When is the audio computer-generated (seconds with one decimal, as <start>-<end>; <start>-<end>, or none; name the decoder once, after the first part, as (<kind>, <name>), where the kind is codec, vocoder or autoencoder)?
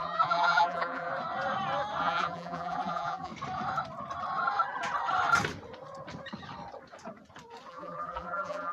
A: 0.0-1.1 (vocoder, BigVGAN v2); 2.0-3.3; 7.7-8.7